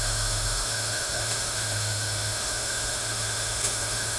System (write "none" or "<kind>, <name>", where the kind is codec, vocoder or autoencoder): autoencoder, DAC-VAE